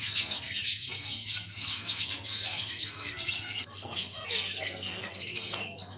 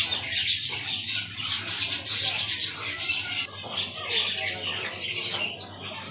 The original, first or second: second